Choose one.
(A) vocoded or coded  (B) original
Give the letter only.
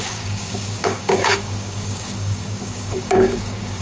A